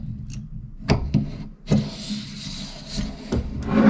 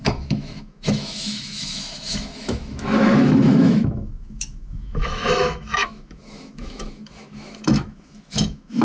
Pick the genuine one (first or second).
first